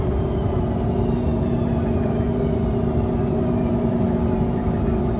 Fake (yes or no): yes